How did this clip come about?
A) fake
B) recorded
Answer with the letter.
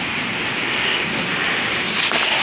B